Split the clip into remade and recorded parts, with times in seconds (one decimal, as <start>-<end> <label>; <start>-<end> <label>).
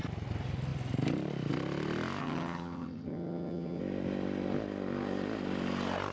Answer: 0.0-2.2 recorded; 2.2-3.8 remade; 3.8-6.1 recorded